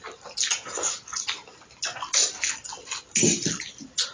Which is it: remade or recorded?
recorded